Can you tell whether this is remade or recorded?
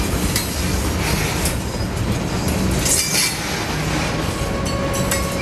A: recorded